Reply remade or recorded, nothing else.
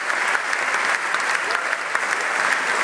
recorded